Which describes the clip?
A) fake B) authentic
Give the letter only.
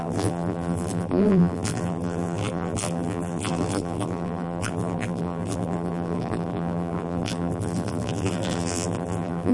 A